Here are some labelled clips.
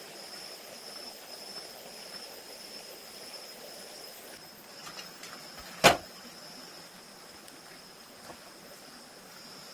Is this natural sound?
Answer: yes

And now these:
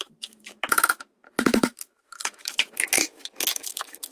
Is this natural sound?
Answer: no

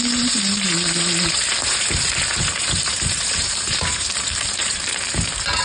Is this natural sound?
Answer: no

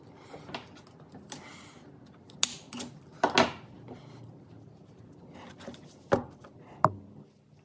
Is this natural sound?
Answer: yes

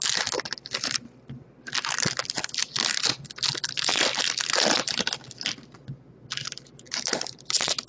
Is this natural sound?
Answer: yes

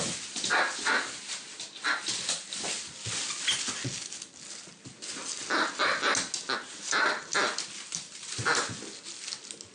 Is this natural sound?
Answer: yes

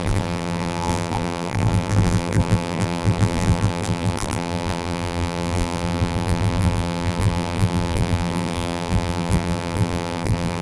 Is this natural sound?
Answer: no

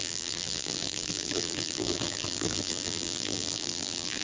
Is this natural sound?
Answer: no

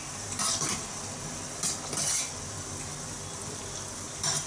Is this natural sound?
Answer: yes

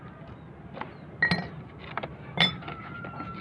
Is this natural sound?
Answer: yes